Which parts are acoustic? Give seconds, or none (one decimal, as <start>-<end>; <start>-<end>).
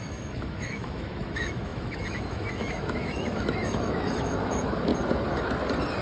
4.9-6.0